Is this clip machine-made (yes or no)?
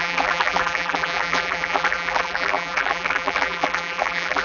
yes